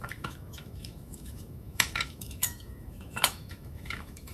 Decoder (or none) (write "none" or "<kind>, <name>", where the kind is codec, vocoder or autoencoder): autoencoder, DAC-VAE